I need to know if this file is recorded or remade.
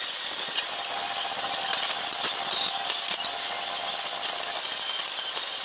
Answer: remade